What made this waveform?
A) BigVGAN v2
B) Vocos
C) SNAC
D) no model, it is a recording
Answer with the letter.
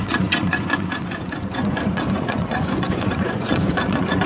B